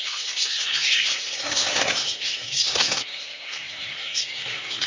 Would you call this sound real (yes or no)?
no